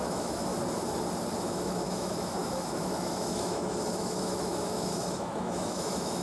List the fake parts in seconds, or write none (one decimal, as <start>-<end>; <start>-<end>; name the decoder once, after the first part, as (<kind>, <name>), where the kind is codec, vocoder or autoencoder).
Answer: 0.0-0.5 (autoencoder, DAC-VAE); 1.4-6.2